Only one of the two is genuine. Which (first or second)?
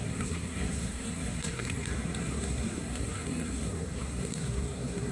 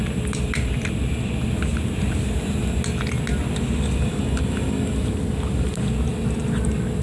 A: second